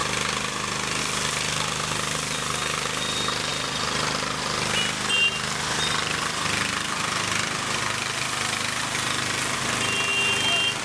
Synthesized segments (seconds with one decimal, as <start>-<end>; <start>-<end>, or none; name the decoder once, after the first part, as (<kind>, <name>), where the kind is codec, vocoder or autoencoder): none